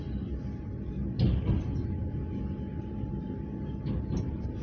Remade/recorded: recorded